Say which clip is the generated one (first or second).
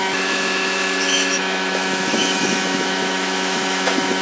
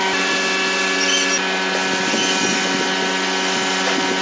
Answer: first